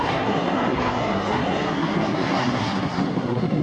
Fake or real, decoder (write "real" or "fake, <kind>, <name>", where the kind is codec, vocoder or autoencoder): fake, codec, SNAC